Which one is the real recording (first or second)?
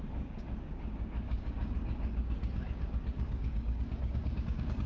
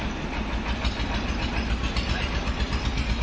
second